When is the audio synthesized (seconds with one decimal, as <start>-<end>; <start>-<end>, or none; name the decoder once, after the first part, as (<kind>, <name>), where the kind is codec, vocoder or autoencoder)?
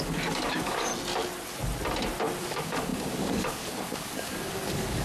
0.0-0.9 (codec, DAC); 2.4-5.0